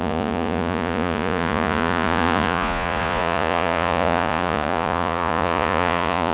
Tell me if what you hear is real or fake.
fake